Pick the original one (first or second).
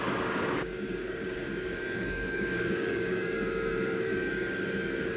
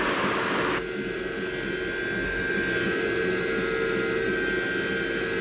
second